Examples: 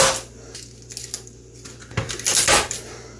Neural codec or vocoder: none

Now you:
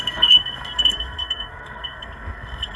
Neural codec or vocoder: codec, SNAC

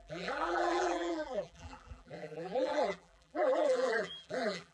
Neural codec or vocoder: vocoder, BigVGAN v2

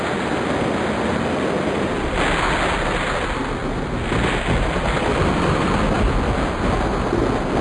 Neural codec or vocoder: none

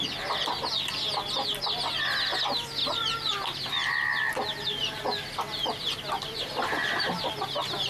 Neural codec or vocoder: none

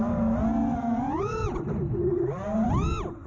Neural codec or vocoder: none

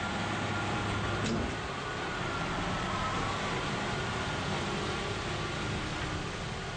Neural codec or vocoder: none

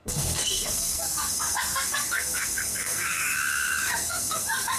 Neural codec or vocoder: codec, SNAC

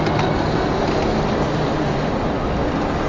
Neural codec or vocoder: none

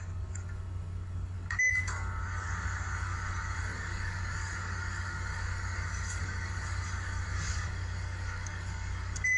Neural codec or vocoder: codec, DAC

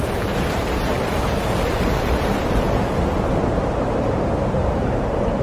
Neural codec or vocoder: vocoder, BigVGAN v2